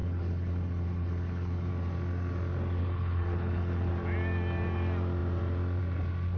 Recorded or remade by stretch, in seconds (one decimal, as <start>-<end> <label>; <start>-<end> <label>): 0.0-1.7 remade; 1.7-2.8 recorded; 2.8-3.9 remade; 3.9-6.4 recorded